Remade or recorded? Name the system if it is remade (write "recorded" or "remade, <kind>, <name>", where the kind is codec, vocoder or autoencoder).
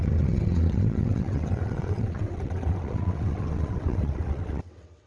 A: remade, vocoder, WaveNeXt